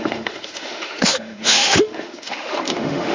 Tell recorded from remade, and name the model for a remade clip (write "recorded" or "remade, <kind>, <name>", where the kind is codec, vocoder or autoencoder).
remade, autoencoder, DAC-VAE